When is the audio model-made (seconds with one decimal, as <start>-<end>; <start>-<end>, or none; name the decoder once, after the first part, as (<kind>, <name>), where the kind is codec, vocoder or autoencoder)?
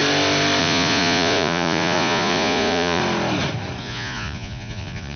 0.6-3.0 (vocoder, Vocos); 3.8-5.2